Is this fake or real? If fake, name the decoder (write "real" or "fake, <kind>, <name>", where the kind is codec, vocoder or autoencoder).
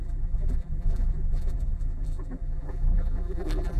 fake, vocoder, BigVGAN v2